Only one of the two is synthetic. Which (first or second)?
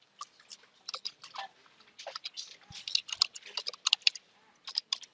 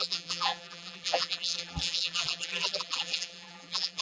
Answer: second